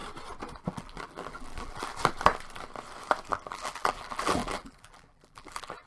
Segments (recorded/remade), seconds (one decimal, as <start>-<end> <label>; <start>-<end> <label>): 0.0-0.6 recorded; 0.6-1.9 remade; 1.9-3.3 recorded; 3.3-5.9 remade